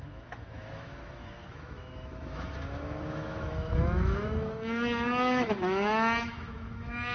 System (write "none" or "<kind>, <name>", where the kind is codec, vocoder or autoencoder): autoencoder, DAC-VAE